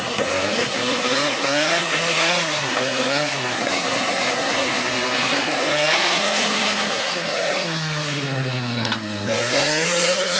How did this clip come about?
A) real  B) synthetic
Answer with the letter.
B